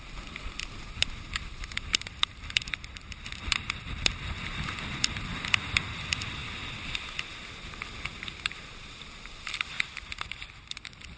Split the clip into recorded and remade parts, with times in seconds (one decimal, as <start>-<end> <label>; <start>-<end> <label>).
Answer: 0.0-11.2 recorded